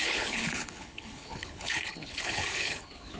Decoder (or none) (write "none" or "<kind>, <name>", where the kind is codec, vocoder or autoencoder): codec, HILCodec